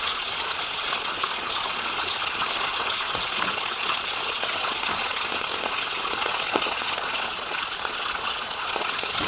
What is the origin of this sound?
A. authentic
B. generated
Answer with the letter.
B